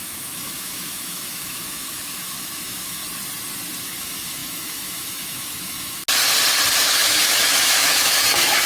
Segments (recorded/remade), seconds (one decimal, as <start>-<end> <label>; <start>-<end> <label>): 0.0-3.0 remade; 3.0-3.8 recorded; 3.8-6.0 remade; 6.0-6.8 recorded; 6.8-8.7 remade